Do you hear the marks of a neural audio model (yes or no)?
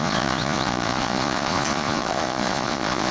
yes